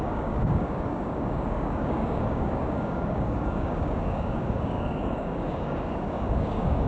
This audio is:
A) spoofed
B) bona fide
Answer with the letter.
A